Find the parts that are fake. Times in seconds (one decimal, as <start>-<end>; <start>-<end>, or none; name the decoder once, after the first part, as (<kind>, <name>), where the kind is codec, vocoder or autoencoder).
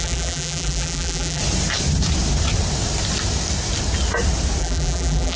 0.0-1.4 (vocoder, BigVGAN v2); 4.6-5.4